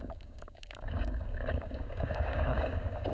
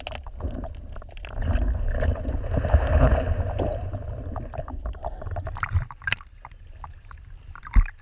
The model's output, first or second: first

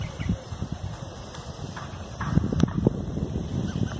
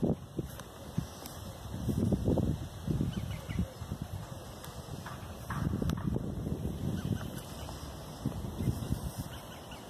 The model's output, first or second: first